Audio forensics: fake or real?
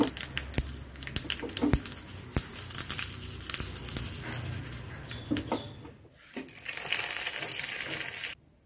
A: real